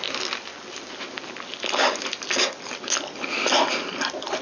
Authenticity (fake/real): real